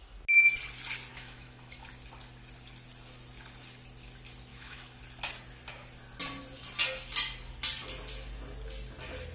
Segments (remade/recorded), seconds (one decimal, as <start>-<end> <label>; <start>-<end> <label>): 0.0-1.1 recorded; 1.1-1.9 remade; 1.9-4.5 recorded; 4.5-5.0 remade; 5.0-9.3 recorded